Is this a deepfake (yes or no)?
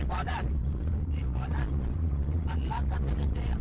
yes